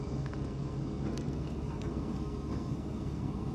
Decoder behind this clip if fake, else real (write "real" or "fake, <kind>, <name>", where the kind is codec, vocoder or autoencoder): fake, codec, SNAC